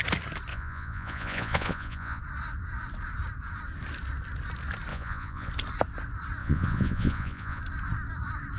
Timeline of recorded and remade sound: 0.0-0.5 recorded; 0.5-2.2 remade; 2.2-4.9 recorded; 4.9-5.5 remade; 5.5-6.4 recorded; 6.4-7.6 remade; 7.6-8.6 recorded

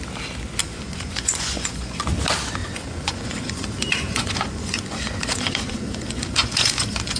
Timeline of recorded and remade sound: 0.0-0.6 recorded; 0.6-2.0 remade; 2.0-2.6 recorded; 2.6-7.2 remade